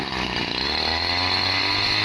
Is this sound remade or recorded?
recorded